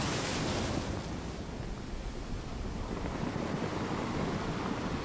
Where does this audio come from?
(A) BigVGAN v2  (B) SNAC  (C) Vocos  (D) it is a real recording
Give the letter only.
D